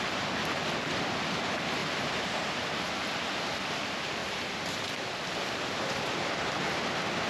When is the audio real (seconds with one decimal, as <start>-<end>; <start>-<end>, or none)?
0.0-1.8; 2.5-4.2; 5.0-7.3